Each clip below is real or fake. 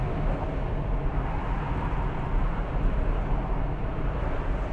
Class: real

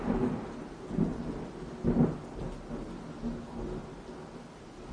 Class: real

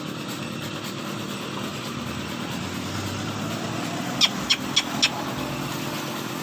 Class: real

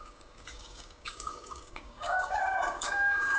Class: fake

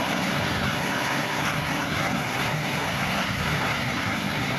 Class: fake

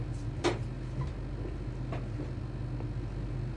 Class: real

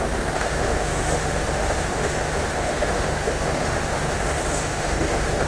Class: fake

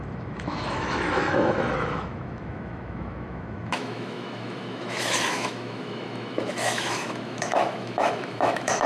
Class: fake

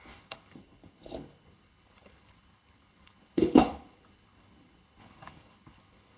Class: fake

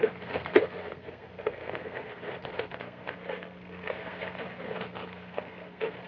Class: fake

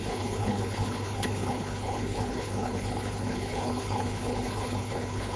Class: fake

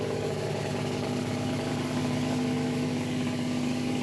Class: fake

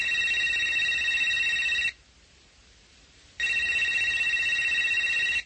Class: real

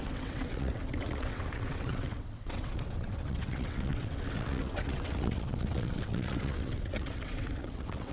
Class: fake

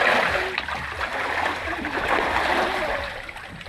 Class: real